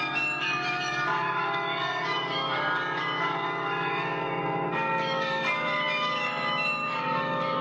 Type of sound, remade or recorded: remade